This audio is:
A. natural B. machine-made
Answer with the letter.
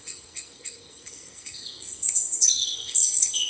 B